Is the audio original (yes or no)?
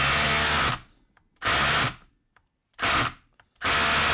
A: yes